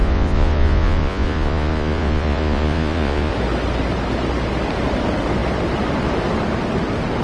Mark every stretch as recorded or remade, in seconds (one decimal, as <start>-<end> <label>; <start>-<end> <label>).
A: 0.0-3.3 remade; 3.3-7.2 recorded